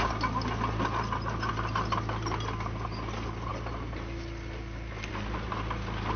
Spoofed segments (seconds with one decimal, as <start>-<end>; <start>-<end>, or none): none

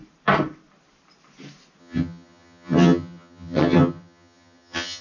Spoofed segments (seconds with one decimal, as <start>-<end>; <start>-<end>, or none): 1.8-5.0

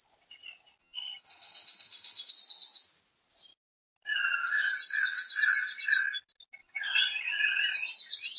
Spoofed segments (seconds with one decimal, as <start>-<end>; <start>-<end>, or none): 0.8-2.3; 4.1-4.7; 6.6-7.6